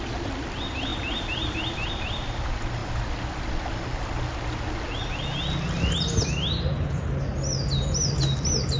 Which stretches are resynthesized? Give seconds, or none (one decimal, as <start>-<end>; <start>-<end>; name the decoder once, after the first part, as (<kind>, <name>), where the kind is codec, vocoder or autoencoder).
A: 0.9-1.9 (vocoder, BigVGAN v2)